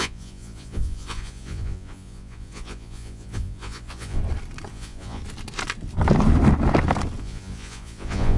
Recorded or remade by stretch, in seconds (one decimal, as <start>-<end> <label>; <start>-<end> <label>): 0.0-4.2 remade; 4.2-4.7 recorded; 4.7-5.2 remade; 5.2-7.2 recorded; 7.2-8.4 remade